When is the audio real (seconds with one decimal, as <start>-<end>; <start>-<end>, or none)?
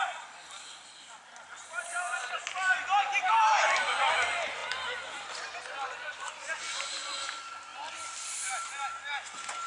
0.0-7.7; 8.5-9.7